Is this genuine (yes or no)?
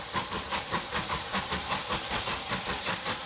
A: no